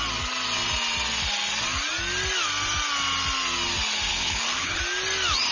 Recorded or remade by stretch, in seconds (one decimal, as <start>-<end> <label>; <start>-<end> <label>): 0.0-4.1 recorded; 4.1-4.8 remade; 4.8-5.5 recorded